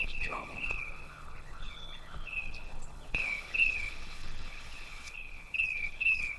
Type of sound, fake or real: fake